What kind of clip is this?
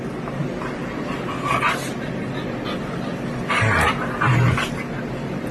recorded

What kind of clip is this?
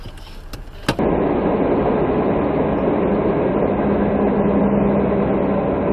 recorded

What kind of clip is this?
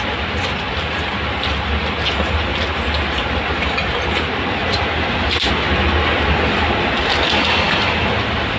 recorded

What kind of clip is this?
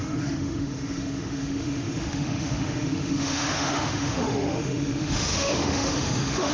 remade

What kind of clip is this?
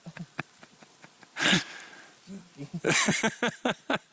remade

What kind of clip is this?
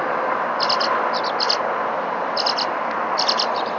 recorded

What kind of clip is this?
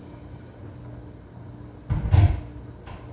recorded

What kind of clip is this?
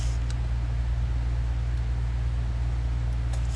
recorded